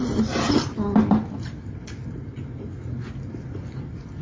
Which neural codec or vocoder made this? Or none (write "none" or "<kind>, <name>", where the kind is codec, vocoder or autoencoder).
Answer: none